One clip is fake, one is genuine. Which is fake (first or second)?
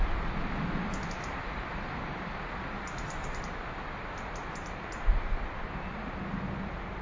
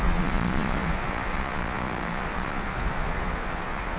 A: second